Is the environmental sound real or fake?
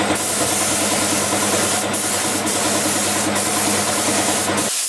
real